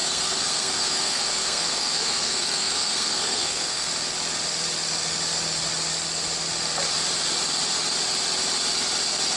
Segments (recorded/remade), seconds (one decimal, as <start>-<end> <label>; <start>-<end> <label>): 0.0-3.9 remade; 3.9-9.4 recorded